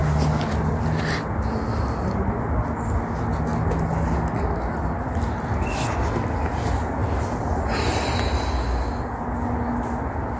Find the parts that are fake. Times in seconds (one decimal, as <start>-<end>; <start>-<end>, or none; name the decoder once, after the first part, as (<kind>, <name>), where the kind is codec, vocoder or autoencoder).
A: none